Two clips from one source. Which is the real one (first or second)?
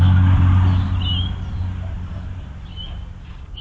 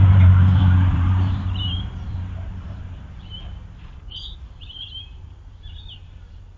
first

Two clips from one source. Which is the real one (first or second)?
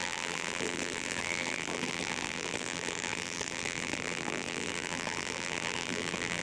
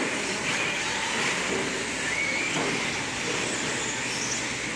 second